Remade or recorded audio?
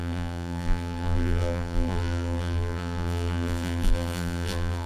remade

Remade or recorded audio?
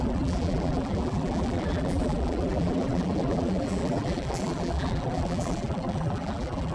remade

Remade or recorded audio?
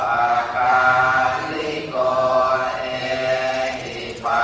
remade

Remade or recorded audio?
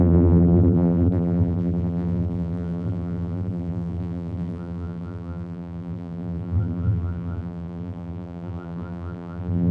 remade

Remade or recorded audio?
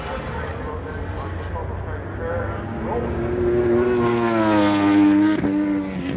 recorded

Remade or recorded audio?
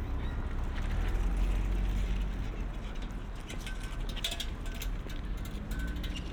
recorded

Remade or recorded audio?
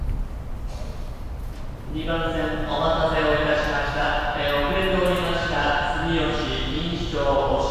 recorded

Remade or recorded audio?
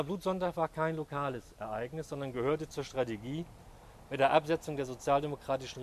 recorded